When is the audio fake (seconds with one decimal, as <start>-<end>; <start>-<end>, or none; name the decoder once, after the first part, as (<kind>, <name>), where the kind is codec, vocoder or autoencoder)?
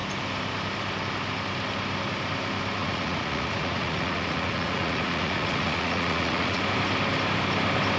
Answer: 2.8-6.6 (vocoder, Vocos)